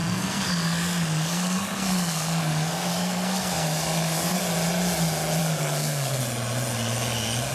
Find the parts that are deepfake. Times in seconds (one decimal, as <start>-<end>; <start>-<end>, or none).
0.0-4.4; 5.4-6.2